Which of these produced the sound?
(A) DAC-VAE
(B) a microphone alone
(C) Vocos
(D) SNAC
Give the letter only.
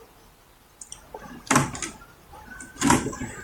B